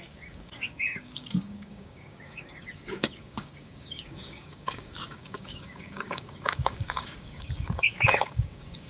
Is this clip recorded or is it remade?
remade